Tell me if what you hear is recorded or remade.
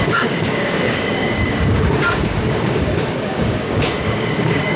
remade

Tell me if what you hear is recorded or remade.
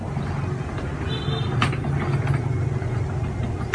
recorded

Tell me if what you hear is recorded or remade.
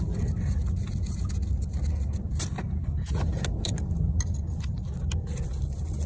recorded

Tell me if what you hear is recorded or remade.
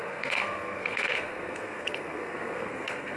remade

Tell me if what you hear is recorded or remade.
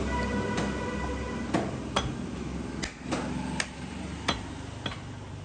recorded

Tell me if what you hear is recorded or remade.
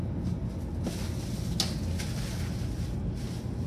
recorded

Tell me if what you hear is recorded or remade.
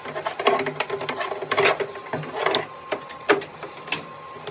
recorded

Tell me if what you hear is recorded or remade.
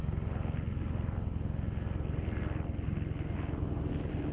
recorded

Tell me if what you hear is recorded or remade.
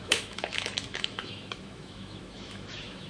remade